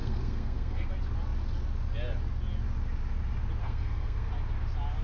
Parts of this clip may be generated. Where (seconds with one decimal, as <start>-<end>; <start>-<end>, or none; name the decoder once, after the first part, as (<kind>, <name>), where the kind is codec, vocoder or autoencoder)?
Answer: 0.0-0.9 (codec, SNAC); 3.6-4.3